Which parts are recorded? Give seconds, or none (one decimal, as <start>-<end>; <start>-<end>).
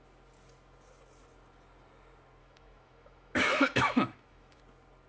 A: 0.0-2.4; 4.6-5.1